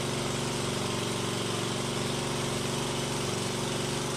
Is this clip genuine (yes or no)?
yes